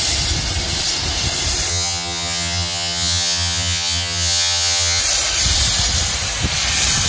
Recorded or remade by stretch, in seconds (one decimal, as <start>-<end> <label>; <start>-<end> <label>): 0.0-1.7 recorded; 1.7-5.0 remade; 5.0-7.1 recorded